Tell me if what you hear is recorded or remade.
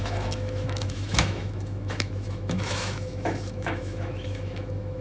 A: remade